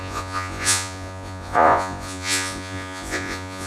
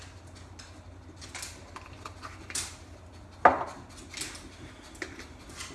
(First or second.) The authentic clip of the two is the second